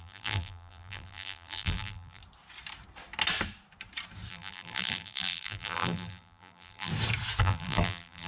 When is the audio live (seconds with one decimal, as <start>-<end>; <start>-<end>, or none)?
2.2-4.3; 6.9-7.4